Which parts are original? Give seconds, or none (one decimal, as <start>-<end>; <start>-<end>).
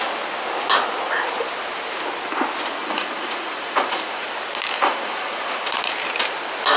0.0-2.8; 4.3-4.8; 5.6-6.8